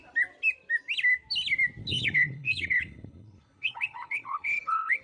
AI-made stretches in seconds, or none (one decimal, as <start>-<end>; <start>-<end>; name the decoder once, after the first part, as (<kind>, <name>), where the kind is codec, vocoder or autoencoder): 1.8-5.0 (codec, HILCodec)